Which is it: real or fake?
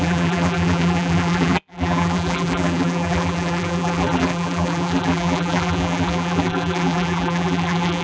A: fake